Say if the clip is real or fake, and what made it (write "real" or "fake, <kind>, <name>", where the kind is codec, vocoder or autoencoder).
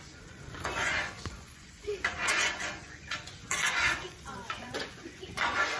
fake, vocoder, Vocos